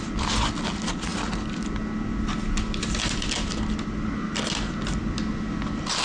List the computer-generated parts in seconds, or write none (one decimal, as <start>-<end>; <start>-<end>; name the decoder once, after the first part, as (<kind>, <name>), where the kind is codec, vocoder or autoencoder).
none